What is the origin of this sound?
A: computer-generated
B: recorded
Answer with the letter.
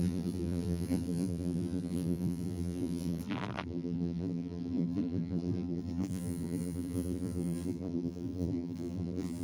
A